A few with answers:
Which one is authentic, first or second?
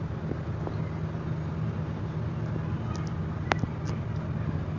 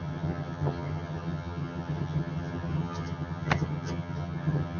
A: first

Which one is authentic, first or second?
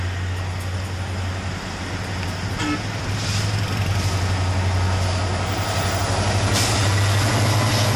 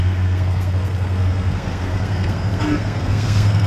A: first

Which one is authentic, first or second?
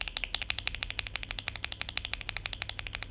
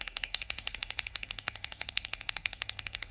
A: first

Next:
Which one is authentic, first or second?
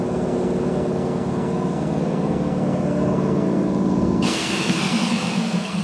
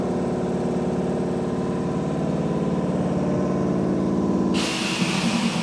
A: second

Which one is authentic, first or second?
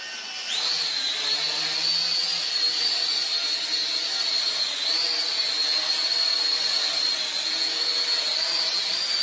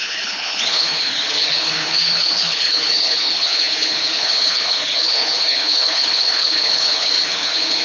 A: first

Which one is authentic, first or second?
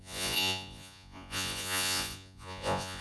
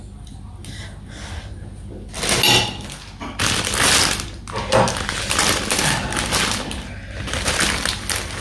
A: second